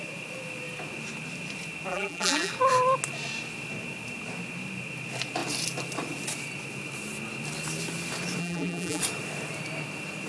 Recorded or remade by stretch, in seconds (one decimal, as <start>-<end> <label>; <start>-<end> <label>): 0.0-1.9 recorded; 1.9-2.5 remade; 2.5-8.4 recorded; 8.4-9.0 remade; 9.0-10.3 recorded